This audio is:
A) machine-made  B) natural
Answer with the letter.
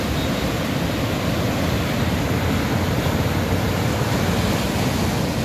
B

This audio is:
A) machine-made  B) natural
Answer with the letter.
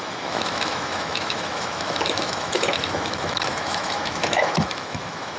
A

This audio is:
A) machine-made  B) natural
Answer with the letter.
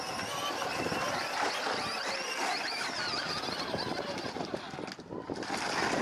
B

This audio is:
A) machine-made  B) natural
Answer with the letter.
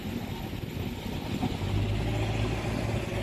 B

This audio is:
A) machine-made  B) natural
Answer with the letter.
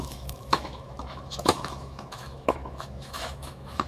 A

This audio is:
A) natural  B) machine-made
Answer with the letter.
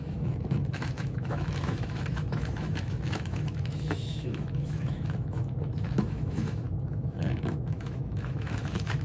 B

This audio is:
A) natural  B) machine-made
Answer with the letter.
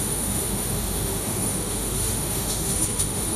B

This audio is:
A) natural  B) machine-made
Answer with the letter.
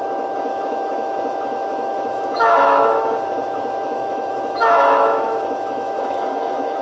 B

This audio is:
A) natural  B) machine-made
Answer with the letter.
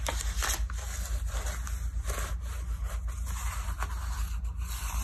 A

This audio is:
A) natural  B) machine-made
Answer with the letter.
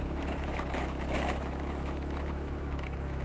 B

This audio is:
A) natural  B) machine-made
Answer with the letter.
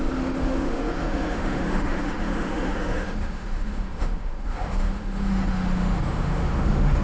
B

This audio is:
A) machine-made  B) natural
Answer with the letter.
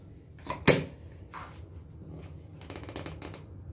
B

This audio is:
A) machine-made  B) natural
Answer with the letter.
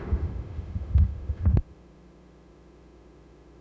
A